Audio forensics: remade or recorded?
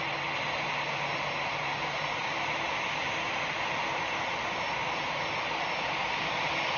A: recorded